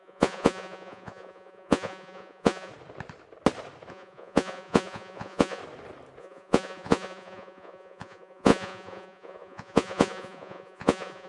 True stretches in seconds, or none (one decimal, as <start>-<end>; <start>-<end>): 2.7-3.9; 5.6-6.2